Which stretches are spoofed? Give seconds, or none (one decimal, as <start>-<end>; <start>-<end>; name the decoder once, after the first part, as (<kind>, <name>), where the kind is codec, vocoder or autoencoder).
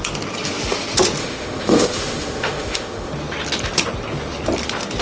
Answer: 1.2-3.1 (autoencoder, DAC-VAE)